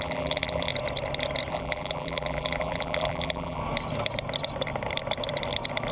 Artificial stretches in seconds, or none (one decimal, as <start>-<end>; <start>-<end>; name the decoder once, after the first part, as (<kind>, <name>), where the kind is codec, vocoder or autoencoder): 0.0-0.7 (vocoder, BigVGAN v2); 1.5-3.6